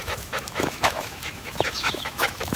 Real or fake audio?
fake